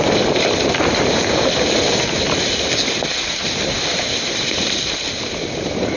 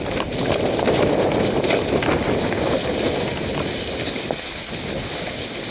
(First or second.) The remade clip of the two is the first